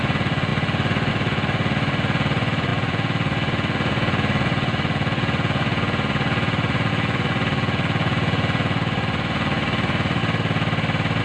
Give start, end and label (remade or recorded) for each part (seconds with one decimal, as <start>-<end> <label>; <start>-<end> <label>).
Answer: 0.0-10.2 remade; 10.2-11.2 recorded